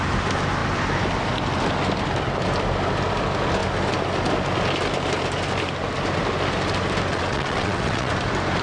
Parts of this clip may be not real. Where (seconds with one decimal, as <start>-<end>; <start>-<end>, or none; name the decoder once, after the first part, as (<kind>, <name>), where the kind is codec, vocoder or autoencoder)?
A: 7.1-8.1 (vocoder, WaveNeXt)